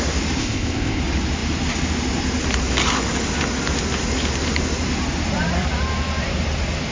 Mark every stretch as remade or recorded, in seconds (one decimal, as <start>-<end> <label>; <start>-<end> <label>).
0.0-0.4 recorded; 0.4-1.0 remade; 1.0-6.9 recorded